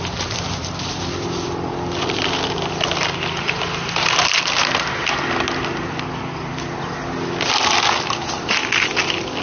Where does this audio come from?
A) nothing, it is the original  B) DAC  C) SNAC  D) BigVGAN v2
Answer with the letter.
A